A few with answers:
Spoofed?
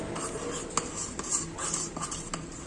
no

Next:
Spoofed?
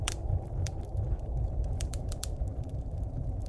yes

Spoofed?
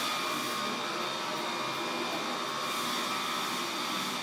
no